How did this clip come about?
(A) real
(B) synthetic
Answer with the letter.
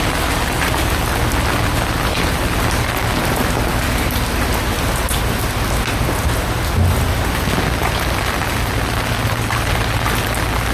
A